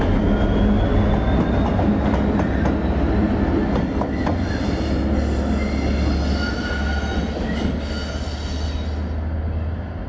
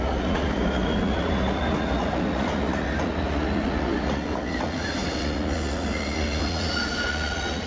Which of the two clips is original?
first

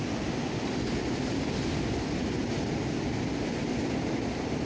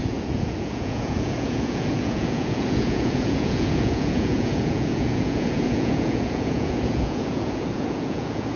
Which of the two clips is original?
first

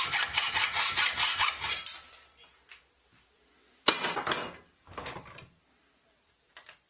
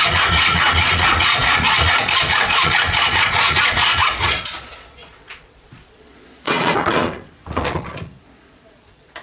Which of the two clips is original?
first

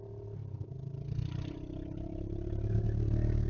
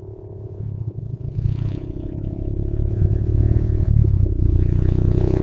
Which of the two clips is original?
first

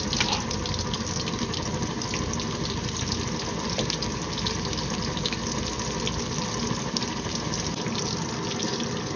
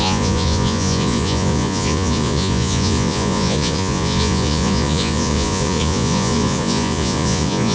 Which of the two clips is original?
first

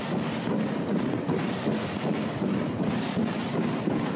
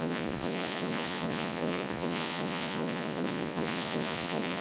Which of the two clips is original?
first